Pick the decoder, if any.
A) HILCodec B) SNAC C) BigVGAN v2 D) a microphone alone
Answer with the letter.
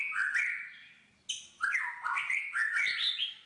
D